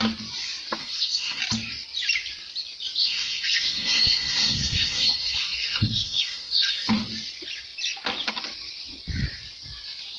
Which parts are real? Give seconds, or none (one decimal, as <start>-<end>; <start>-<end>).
0.0-0.8; 1.4-3.0; 6.9-10.2